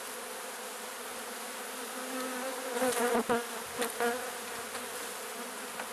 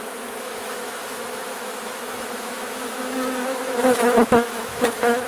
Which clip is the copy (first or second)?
second